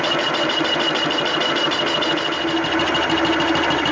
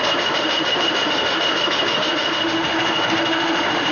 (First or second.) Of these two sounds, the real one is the first